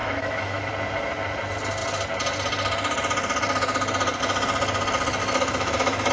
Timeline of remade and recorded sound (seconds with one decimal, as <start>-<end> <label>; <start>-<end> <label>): 0.0-0.7 remade; 0.7-5.2 recorded; 5.2-6.1 remade